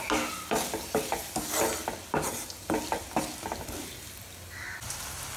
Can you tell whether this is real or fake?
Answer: real